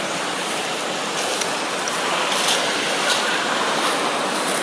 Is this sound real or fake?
real